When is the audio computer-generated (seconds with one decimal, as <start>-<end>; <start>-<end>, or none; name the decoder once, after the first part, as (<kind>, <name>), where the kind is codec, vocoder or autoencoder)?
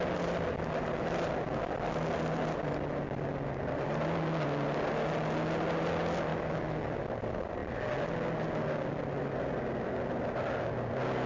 6.3-6.8 (autoencoder, DAC-VAE)